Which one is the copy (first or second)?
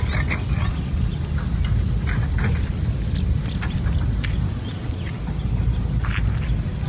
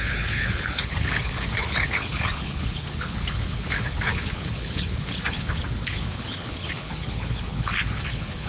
second